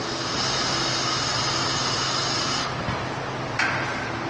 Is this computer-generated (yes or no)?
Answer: no